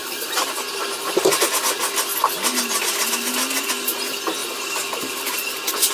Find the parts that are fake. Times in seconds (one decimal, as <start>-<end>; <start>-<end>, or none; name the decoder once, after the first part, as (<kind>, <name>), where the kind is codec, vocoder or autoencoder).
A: 0.0-1.6 (vocoder, BigVGAN v2); 4.4-5.9